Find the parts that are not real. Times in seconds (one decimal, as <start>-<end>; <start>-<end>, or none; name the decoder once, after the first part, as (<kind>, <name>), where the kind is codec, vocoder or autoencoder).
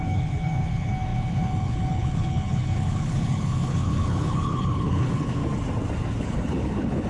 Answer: 0.0-5.4 (codec, HILCodec); 6.2-7.1